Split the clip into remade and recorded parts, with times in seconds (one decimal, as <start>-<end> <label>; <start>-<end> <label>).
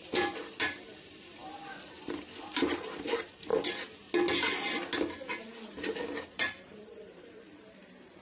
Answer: 0.0-3.5 remade; 3.5-6.2 recorded; 6.2-8.2 remade